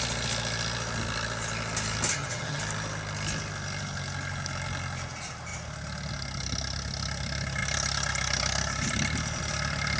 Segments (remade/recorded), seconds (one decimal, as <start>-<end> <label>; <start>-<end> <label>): 0.0-2.1 recorded; 2.1-2.6 remade; 2.6-10.0 recorded